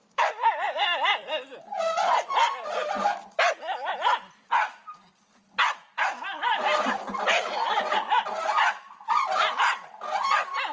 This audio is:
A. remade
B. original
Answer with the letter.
B